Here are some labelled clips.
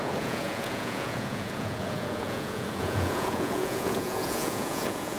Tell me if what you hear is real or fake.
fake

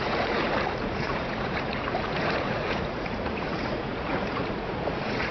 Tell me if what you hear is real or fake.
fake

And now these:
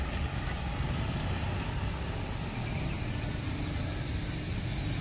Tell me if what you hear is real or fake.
real